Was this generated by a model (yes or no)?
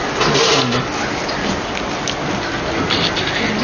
no